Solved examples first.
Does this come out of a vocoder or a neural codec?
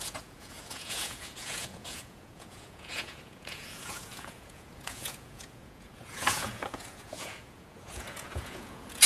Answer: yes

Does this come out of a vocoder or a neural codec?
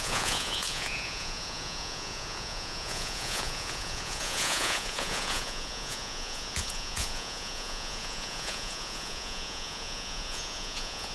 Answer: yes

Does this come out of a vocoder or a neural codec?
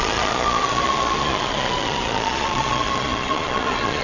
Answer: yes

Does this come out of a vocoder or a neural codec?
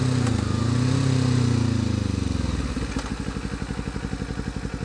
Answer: no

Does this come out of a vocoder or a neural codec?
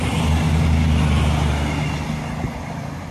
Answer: no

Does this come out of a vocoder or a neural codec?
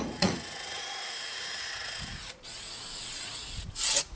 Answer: yes